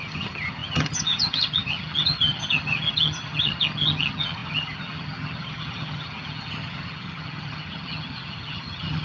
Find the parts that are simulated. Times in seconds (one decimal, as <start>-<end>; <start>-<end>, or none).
0.0-9.0